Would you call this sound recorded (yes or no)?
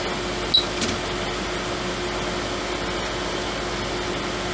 yes